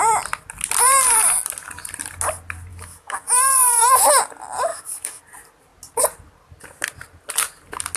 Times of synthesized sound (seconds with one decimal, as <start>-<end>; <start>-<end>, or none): 2.7-4.2; 4.7-5.2